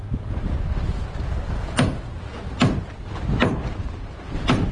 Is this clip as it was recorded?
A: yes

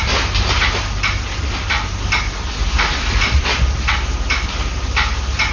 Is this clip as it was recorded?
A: yes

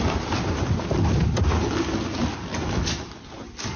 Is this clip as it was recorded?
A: yes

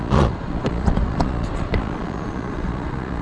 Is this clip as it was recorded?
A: no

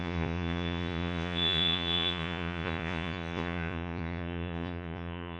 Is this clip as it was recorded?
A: no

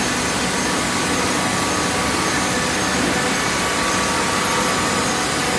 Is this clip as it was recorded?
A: yes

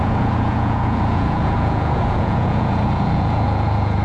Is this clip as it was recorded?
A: no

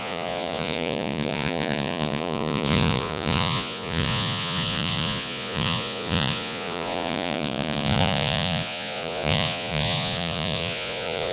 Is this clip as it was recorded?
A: no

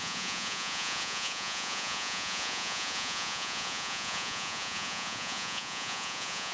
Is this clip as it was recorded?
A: no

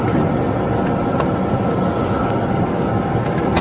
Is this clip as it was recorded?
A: yes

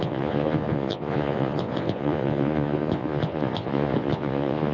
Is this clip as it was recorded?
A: no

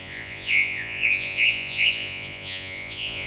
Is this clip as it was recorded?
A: no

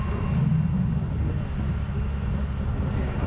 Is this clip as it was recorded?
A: yes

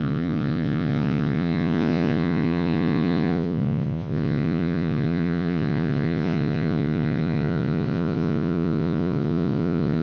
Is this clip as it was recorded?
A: no